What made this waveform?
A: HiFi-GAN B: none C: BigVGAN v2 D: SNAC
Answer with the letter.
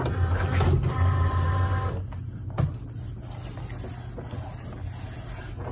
B